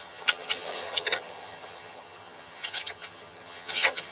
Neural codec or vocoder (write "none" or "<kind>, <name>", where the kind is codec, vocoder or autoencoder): vocoder, HiFi-GAN